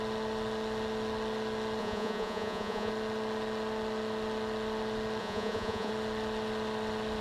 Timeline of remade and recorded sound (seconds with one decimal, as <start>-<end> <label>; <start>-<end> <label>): 0.0-1.8 recorded; 1.8-2.9 remade; 2.9-5.2 recorded; 5.2-5.9 remade; 5.9-7.2 recorded